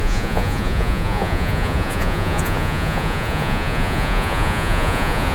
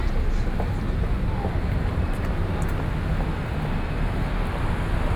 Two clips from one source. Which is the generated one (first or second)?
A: first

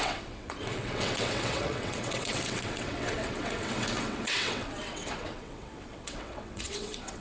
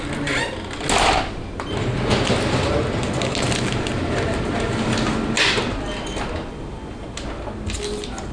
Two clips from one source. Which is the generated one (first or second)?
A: first